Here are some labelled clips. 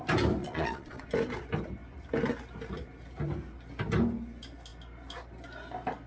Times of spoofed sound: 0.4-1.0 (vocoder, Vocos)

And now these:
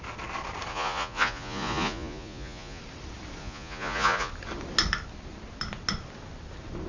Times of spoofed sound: 0.7-2.8 (vocoder, Vocos); 3.4-4.3

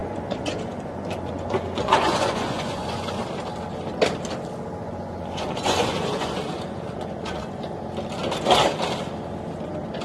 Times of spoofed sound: 0.0-3.2 (vocoder, Vocos); 4.8-7.7